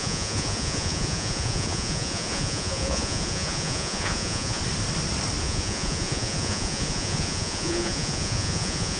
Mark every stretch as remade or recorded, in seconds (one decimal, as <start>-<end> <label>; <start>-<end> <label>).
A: 0.0-4.6 remade; 4.6-5.4 recorded; 5.4-9.0 remade